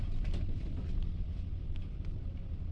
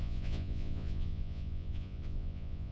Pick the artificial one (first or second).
second